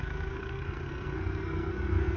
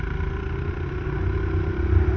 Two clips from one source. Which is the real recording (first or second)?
second